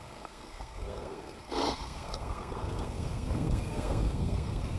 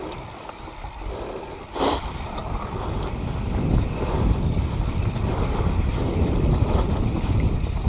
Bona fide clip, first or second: second